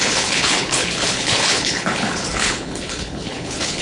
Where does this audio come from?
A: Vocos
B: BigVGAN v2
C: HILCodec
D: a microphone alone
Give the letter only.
C